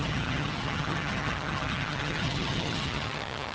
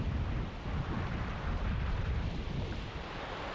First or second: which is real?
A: second